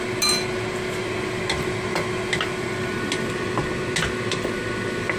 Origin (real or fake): real